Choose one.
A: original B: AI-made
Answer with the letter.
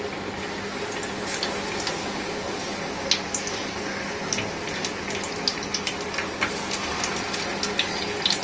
A